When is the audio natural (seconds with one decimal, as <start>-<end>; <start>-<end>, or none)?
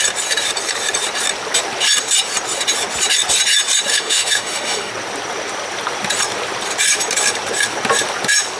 0.0-3.9; 4.9-8.6